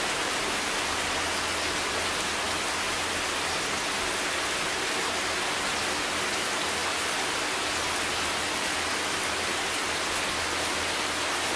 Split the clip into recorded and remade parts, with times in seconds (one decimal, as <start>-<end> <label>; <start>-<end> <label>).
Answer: 0.0-11.6 recorded

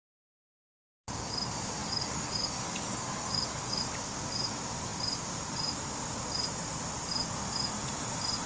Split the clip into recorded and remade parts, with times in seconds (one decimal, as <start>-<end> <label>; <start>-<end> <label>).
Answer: 0.0-1.8 recorded; 1.8-3.8 remade; 3.8-8.5 recorded